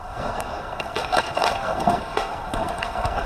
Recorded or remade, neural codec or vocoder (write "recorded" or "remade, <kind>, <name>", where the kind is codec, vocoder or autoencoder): remade, codec, SNAC